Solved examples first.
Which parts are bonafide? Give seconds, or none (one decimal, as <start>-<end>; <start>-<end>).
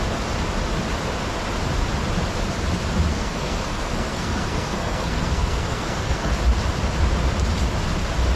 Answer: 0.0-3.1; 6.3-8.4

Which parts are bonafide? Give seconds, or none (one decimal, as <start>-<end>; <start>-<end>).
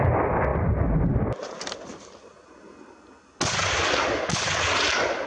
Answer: 0.0-5.3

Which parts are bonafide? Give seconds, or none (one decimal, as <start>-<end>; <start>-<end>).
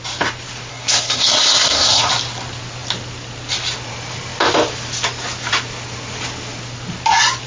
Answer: 0.0-0.7; 2.1-7.5